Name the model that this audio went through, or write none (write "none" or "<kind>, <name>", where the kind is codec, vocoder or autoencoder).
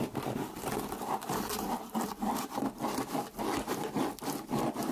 none